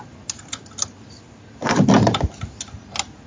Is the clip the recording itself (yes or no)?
yes